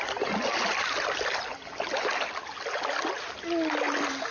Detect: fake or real real